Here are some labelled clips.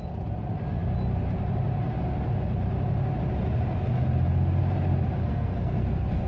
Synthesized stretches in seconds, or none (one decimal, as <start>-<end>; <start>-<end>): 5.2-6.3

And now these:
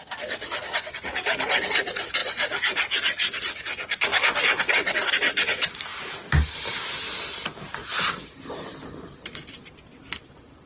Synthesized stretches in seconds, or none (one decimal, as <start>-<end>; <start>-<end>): 4.1-4.6; 7.8-9.8

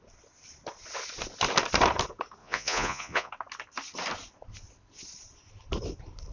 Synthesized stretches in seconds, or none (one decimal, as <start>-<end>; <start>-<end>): 2.4-3.3

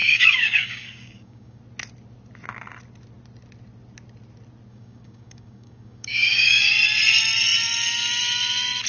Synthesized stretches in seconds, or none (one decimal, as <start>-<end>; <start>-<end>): 0.0-1.6; 4.7-6.6